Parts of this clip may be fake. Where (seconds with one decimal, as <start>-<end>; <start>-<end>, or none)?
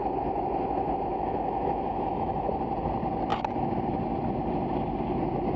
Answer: 1.1-2.5